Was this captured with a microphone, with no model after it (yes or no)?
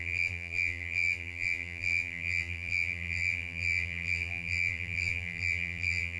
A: no